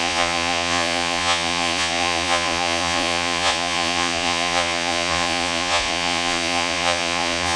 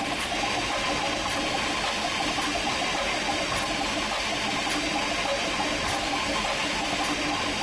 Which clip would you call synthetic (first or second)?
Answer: first